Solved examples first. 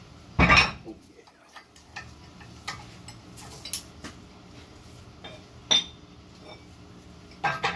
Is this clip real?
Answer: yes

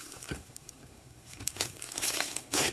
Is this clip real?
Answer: no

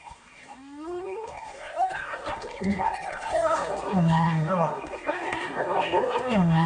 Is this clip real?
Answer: no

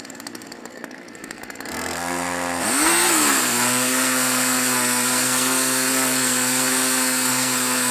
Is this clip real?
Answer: no